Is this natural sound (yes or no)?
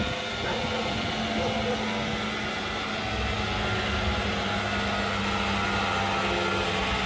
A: yes